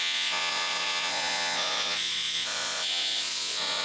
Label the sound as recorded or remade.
remade